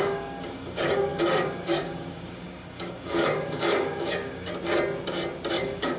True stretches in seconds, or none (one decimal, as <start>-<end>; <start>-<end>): 4.5-5.6